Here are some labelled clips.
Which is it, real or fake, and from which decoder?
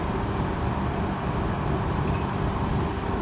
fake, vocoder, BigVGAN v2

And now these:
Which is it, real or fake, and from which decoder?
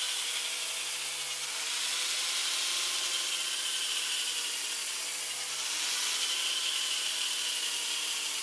real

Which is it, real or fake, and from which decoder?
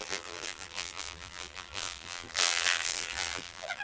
fake, vocoder, BigVGAN v2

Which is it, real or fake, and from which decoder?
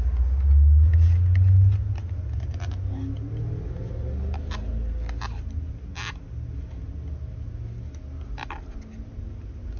real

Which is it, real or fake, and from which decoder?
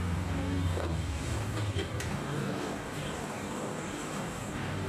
fake, codec, DAC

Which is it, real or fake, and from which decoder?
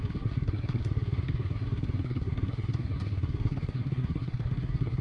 fake, codec, SNAC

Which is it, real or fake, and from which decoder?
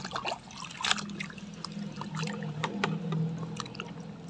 real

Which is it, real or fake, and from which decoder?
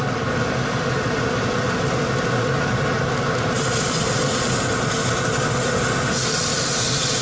real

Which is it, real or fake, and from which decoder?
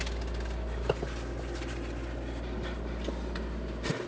real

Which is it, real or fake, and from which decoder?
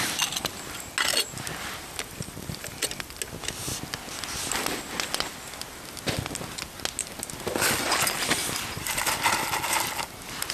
real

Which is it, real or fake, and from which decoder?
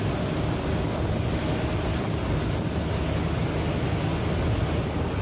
real